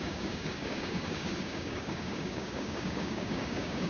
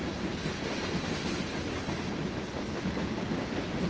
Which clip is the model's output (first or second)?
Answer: first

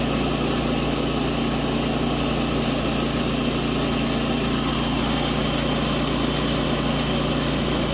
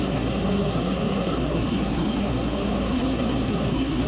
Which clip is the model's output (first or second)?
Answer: second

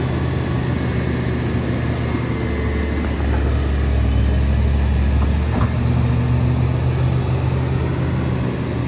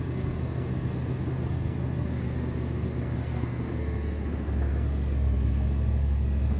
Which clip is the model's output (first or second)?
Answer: second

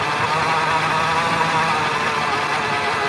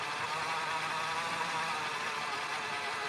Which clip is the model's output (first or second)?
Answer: second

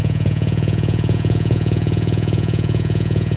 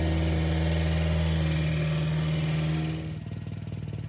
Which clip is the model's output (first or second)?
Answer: first